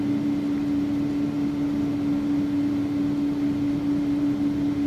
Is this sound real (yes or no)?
yes